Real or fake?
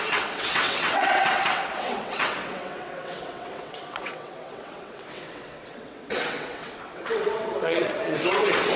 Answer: fake